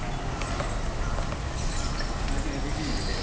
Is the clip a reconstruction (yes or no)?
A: no